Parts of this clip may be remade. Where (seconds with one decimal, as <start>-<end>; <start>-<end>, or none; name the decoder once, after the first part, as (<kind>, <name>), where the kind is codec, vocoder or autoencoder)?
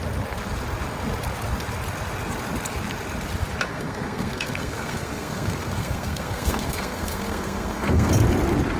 3.7-8.1 (codec, SNAC)